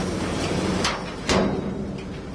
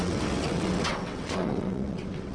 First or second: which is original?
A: first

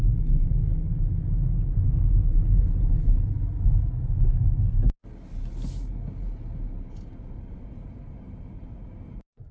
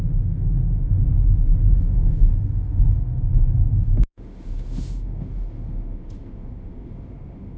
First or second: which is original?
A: first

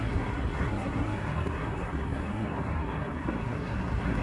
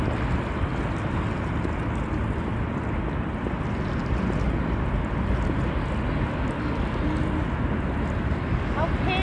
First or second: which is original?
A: second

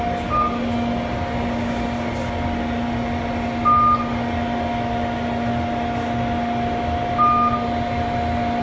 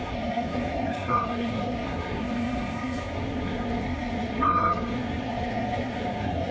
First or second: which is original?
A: first